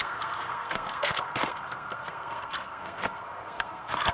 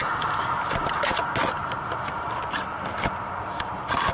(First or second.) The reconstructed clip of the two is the first